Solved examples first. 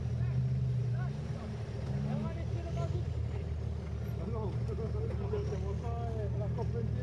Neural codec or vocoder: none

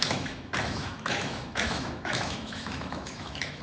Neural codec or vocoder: autoencoder, DAC-VAE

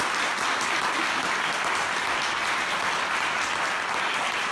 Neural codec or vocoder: none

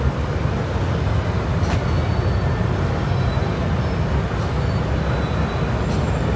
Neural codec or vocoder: none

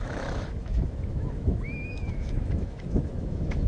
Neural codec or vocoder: autoencoder, DAC-VAE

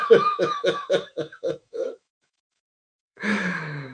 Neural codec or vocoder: autoencoder, DAC-VAE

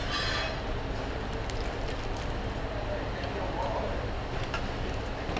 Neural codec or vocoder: none